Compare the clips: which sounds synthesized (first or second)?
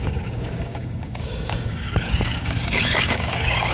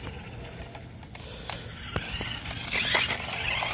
first